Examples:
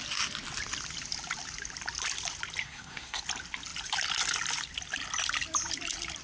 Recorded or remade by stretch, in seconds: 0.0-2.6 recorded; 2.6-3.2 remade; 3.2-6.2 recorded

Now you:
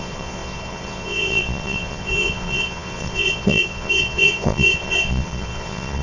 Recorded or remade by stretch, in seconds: 0.0-6.0 remade

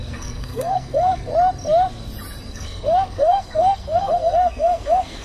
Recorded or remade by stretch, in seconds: 0.0-1.3 remade; 1.3-2.5 recorded; 2.5-5.2 remade

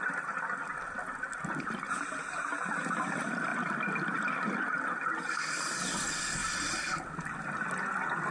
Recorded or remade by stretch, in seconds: 0.0-8.3 recorded

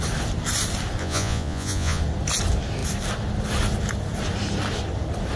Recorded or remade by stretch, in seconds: 0.0-1.0 recorded; 1.0-2.0 remade; 2.0-5.4 recorded

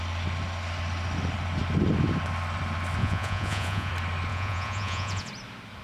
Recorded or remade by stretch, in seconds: 0.0-3.0 recorded; 3.0-3.9 remade; 3.9-4.3 recorded; 4.3-5.3 remade; 5.3-5.8 recorded

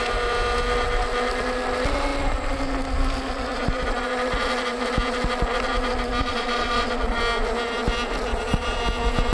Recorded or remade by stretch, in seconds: 0.0-6.2 recorded; 6.2-7.2 remade; 7.2-8.3 recorded; 8.3-8.8 remade; 8.8-9.3 recorded